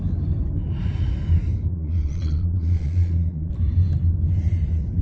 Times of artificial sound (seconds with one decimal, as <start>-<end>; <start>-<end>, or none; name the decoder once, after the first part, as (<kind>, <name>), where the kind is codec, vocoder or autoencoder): 1.7-3.5 (vocoder, Vocos)